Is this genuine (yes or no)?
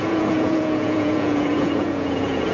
no